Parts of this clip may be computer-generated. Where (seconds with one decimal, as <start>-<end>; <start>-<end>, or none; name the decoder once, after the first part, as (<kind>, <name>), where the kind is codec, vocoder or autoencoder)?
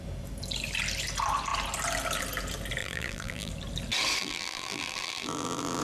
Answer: 2.8-3.5 (vocoder, BigVGAN v2); 4.2-5.8